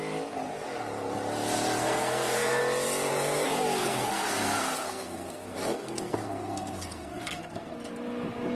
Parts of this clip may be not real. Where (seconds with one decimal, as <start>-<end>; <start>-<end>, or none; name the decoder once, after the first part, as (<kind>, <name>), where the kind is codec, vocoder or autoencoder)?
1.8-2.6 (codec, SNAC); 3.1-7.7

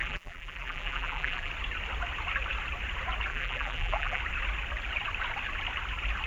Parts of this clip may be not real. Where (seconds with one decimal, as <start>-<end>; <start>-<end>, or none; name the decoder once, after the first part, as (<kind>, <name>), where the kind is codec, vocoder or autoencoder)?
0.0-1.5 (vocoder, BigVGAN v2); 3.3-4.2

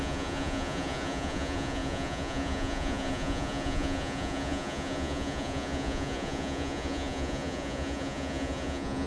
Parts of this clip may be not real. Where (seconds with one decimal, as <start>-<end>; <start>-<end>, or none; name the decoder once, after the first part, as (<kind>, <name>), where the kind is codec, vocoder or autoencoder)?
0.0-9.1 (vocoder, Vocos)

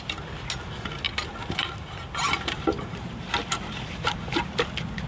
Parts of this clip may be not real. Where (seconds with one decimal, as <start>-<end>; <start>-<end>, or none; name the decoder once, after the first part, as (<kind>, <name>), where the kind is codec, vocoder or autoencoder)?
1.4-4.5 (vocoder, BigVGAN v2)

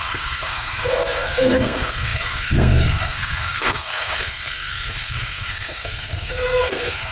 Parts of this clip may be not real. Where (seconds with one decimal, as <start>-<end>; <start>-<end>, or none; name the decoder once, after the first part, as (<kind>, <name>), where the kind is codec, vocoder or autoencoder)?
0.0-7.1 (codec, SNAC)

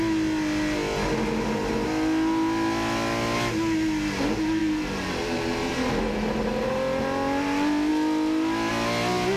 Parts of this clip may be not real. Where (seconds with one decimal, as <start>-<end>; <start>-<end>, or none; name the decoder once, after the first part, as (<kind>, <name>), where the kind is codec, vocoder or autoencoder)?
4.6-5.7 (vocoder, BigVGAN v2)